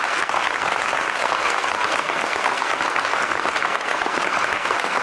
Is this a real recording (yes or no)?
no